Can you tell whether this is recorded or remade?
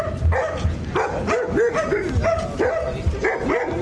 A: recorded